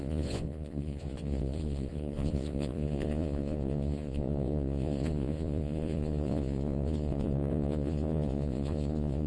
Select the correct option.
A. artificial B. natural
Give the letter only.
A